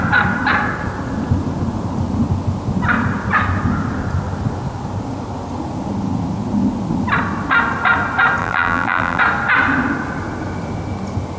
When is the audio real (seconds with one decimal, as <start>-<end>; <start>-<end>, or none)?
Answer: 0.0-8.4; 9.2-11.4